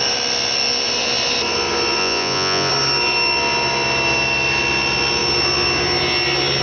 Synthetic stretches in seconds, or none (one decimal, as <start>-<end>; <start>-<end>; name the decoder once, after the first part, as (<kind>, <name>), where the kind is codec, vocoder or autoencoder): 2.0-2.7 (vocoder, Vocos)